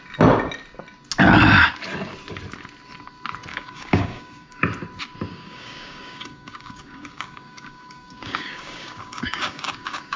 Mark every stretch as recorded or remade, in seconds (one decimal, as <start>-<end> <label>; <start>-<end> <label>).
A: 0.0-3.5 recorded; 3.5-4.6 remade; 4.6-5.3 recorded; 5.3-10.2 remade